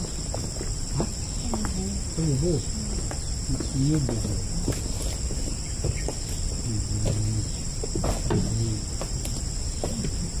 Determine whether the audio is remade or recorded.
recorded